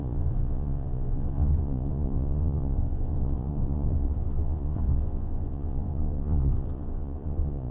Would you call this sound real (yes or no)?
no